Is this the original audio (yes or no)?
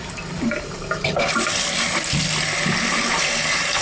yes